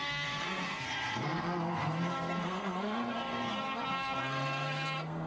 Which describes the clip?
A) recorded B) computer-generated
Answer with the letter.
B